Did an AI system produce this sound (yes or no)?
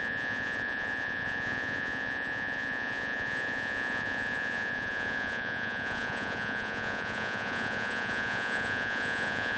yes